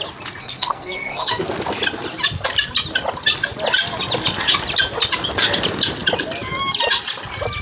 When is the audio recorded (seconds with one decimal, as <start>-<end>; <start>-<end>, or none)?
0.0-0.4; 1.5-7.6

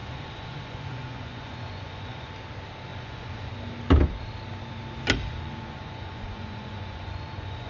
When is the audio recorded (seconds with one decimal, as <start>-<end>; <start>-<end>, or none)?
2.3-2.9; 3.5-5.3

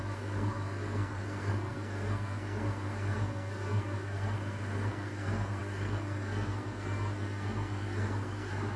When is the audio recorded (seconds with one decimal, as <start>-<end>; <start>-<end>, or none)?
none